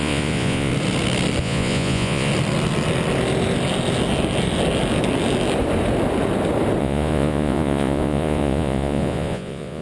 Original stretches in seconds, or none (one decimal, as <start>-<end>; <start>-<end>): 0.7-1.4; 2.3-6.8